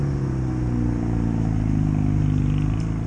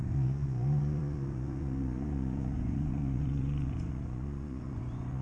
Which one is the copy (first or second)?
second